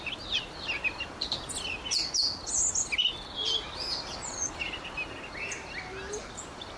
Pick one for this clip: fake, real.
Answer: real